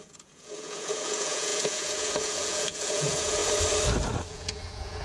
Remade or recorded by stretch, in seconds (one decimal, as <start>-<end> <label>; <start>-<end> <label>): 0.0-3.4 remade; 3.4-4.3 recorded; 4.3-5.0 remade